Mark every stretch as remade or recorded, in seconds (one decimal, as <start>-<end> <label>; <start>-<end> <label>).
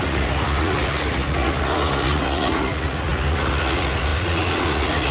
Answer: 0.0-5.1 remade